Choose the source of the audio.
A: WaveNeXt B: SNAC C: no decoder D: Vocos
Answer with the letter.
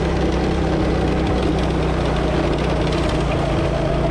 C